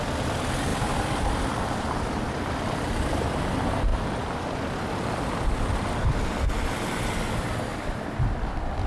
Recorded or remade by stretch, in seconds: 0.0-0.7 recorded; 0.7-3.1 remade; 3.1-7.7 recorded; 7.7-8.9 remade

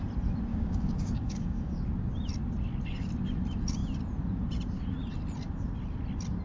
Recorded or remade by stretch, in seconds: 0.0-0.5 recorded; 0.5-1.8 remade; 1.8-6.4 recorded

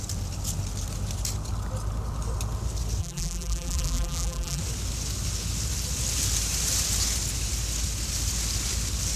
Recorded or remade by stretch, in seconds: 0.0-3.0 recorded; 3.0-4.6 remade; 4.6-9.2 recorded

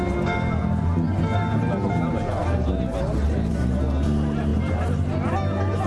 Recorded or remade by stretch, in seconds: 0.0-5.9 recorded

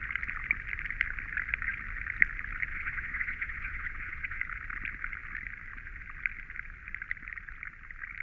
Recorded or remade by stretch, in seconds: 0.0-2.7 recorded; 2.7-4.4 remade; 4.4-8.2 recorded

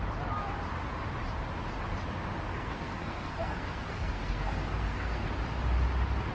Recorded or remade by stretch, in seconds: 0.0-2.5 recorded; 2.5-5.3 remade; 5.3-6.3 recorded

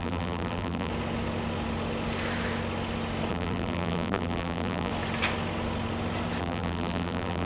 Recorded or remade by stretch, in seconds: 0.0-0.9 remade; 0.9-3.3 recorded; 3.3-4.9 remade; 4.9-6.4 recorded; 6.4-7.5 remade

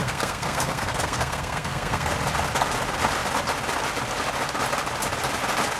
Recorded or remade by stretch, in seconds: 0.0-2.1 remade; 2.1-5.8 recorded